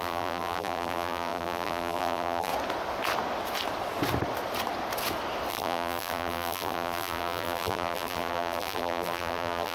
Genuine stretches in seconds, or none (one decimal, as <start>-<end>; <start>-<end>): 2.5-5.5